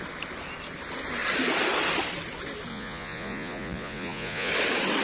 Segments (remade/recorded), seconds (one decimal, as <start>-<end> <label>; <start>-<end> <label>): 0.0-2.7 recorded; 2.7-4.5 remade; 4.5-5.0 recorded